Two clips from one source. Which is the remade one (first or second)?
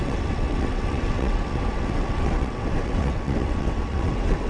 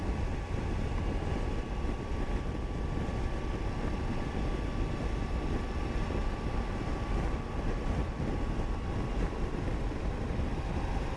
first